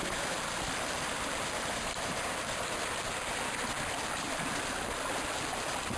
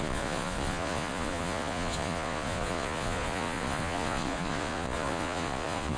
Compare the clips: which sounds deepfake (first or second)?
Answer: second